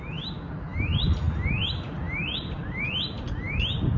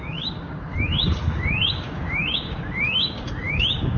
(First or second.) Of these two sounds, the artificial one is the second